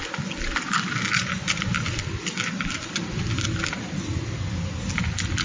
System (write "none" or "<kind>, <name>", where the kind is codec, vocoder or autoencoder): none